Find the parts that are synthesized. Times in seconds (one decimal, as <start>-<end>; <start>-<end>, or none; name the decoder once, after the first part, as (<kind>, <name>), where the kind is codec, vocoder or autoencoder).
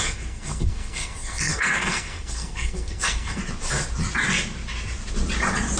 0.0-3.4 (codec, SNAC)